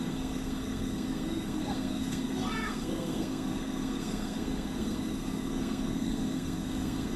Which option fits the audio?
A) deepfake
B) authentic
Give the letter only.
A